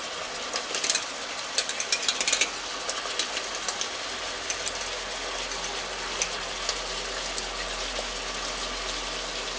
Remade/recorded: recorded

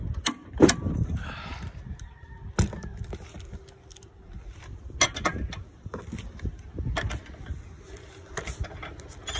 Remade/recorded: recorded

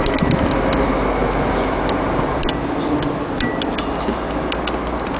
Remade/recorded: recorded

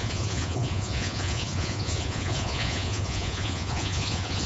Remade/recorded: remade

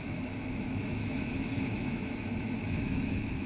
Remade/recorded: remade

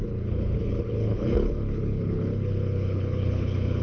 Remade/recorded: remade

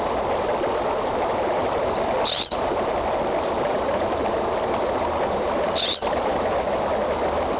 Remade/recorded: recorded